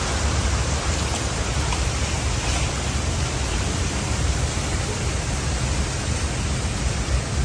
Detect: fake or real real